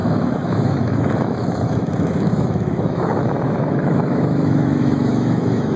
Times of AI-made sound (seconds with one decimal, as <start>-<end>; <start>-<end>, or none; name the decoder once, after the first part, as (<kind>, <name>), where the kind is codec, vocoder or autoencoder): 0.0-5.8 (autoencoder, DAC-VAE)